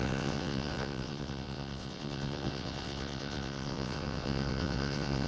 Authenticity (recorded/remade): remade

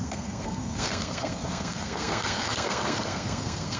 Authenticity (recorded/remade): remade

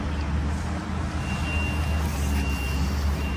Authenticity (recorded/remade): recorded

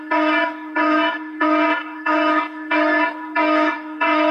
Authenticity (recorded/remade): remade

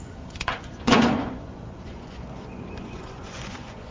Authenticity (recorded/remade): remade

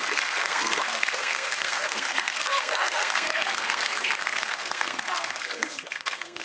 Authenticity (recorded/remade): remade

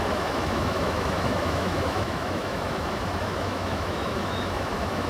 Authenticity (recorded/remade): remade